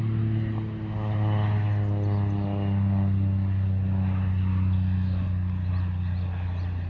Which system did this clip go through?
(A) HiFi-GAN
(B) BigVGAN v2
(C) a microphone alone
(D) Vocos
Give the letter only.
C